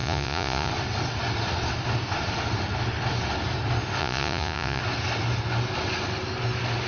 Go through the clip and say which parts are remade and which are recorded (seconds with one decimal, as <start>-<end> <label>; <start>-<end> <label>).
0.0-0.7 remade; 0.7-4.0 recorded; 4.0-4.8 remade; 4.8-6.9 recorded